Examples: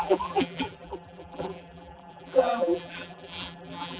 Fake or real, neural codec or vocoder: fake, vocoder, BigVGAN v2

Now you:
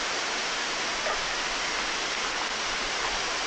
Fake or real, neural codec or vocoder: real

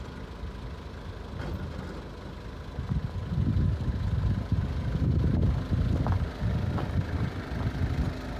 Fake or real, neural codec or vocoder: real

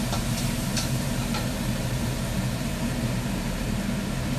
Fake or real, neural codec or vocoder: fake, vocoder, BigVGAN v2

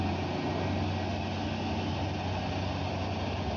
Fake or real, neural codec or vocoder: real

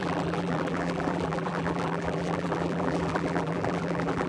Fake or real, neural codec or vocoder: fake, vocoder, BigVGAN v2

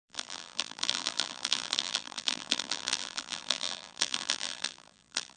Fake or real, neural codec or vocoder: fake, vocoder, BigVGAN v2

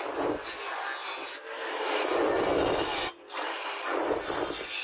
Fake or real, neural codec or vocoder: real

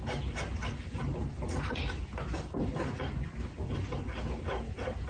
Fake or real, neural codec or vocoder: real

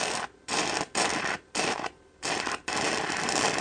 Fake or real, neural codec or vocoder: fake, vocoder, BigVGAN v2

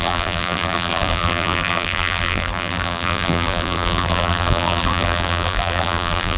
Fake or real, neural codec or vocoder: fake, vocoder, BigVGAN v2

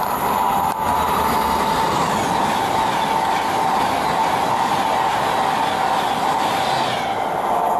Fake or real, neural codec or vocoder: real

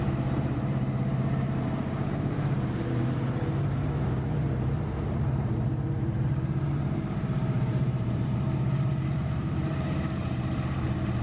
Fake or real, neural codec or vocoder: fake, vocoder, BigVGAN v2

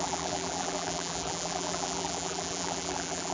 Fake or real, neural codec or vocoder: fake, vocoder, BigVGAN v2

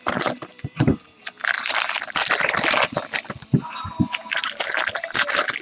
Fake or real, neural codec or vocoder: fake, vocoder, BigVGAN v2